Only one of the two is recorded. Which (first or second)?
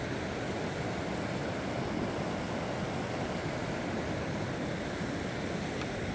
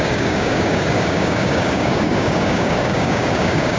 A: first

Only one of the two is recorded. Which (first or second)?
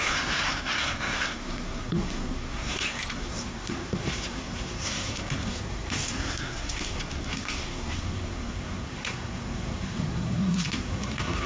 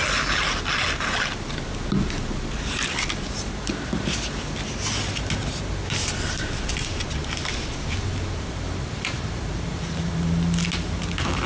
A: second